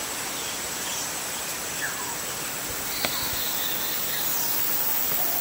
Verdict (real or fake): real